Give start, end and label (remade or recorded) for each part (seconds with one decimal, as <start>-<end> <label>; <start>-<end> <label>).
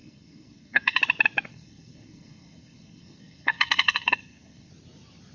0.0-1.0 remade; 1.0-1.5 recorded; 1.5-4.7 remade; 4.7-5.3 recorded